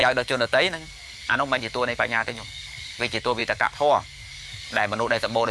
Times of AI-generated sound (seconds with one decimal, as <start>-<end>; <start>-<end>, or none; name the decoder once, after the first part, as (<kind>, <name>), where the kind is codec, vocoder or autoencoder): 0.0-5.5 (codec, DAC)